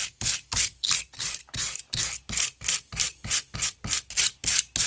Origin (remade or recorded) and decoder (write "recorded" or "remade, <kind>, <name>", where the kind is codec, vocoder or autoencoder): recorded